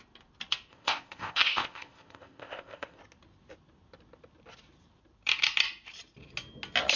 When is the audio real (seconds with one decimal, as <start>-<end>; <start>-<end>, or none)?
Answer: 0.0-0.7; 3.0-7.0